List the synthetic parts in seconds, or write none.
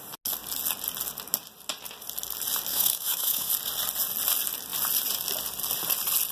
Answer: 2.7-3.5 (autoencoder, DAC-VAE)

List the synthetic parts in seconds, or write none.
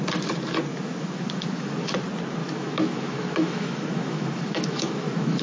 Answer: 0.7-1.9 (autoencoder, DAC-VAE); 2.4-5.4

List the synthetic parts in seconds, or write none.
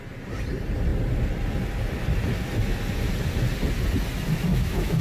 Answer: 4.5-5.0 (autoencoder, DAC-VAE)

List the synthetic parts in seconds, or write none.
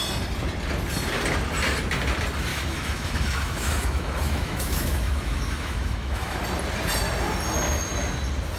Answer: 2.5-6.4 (autoencoder, DAC-VAE)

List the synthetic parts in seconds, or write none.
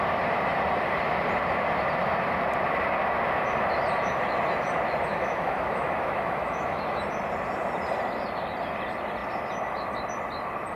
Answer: 5.1-7.0 (autoencoder, DAC-VAE)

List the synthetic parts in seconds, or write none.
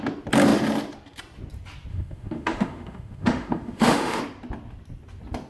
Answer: 1.9-4.2 (autoencoder, DAC-VAE)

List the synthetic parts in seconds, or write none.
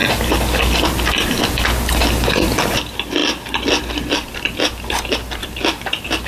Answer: none